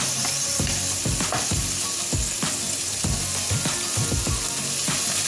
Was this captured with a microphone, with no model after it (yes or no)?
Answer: yes